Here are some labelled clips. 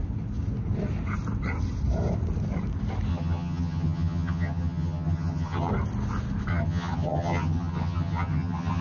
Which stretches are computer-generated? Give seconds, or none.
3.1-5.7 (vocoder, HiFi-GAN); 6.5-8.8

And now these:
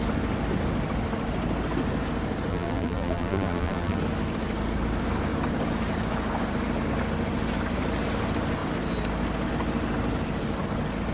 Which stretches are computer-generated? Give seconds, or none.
2.5-4.0 (vocoder, BigVGAN v2)

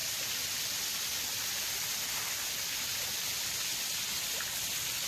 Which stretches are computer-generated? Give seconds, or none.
none

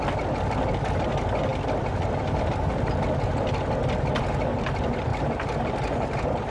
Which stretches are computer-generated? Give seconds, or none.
5.1-6.5 (vocoder, BigVGAN v2)

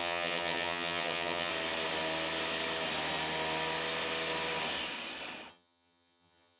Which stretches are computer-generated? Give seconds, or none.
0.0-1.5 (vocoder, HiFi-GAN); 5.5-6.6

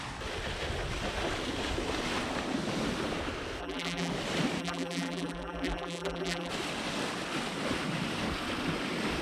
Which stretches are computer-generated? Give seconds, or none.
3.6-4.1 (vocoder, BigVGAN v2); 4.6-6.5

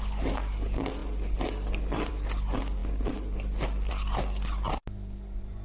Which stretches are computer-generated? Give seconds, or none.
none

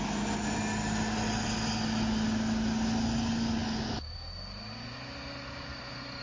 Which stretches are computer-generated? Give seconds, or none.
none